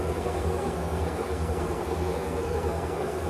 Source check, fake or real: fake